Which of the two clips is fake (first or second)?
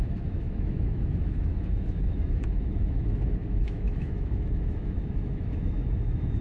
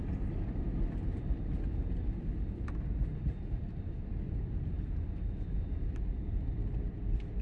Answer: first